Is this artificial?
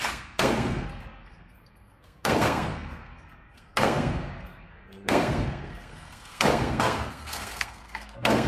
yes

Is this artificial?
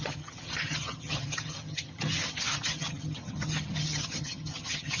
yes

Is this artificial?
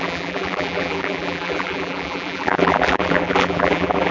yes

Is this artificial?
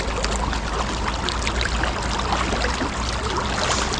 no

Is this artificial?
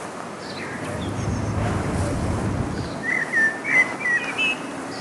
no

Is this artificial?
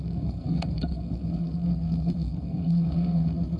yes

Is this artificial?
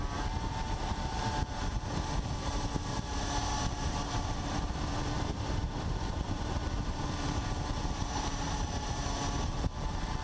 yes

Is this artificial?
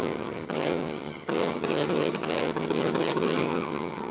yes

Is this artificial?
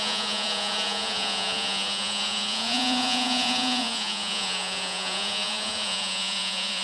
yes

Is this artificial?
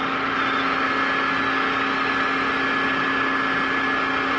no